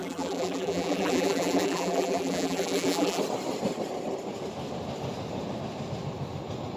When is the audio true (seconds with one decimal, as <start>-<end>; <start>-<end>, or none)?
3.2-6.8